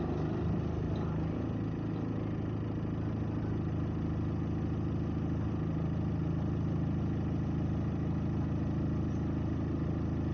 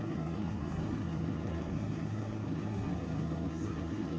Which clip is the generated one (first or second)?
second